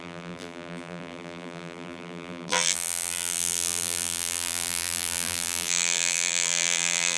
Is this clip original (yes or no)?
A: no